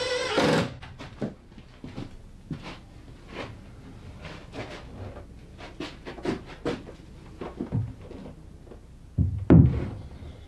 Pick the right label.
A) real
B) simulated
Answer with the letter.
A